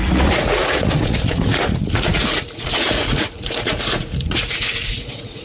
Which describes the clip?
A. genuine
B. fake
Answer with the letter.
B